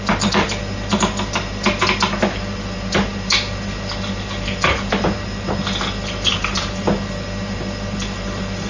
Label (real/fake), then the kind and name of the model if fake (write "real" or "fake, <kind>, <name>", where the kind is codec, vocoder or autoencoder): real